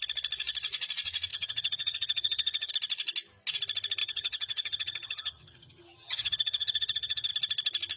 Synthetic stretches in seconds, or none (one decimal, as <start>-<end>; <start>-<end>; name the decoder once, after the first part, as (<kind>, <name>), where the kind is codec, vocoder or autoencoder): 1.3-2.7 (vocoder, HiFi-GAN); 4.0-7.3